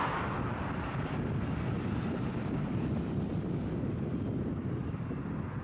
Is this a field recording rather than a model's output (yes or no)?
no